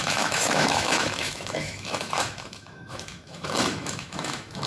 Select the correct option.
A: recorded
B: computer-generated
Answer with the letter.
B